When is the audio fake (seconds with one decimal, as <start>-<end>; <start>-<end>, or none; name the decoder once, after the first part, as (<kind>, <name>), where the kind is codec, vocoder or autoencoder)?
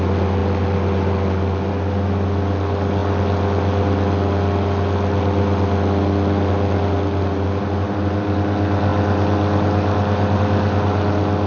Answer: none